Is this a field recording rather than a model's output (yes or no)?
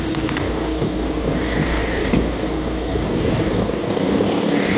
no